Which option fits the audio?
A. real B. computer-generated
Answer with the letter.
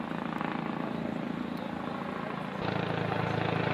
A